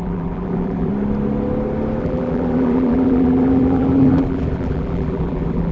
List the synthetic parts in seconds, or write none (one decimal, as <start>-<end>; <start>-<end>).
0.0-0.9; 2.0-5.7